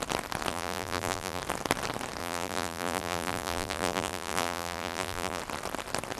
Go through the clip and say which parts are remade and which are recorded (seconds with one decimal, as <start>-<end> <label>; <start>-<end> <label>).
0.0-0.5 recorded; 0.5-1.4 remade; 1.4-2.2 recorded; 2.2-5.4 remade; 5.4-6.2 recorded